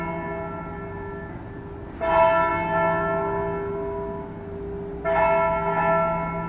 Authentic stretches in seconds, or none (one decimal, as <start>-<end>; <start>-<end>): 0.0-6.5